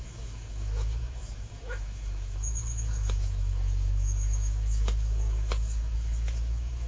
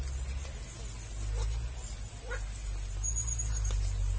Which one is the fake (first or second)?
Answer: first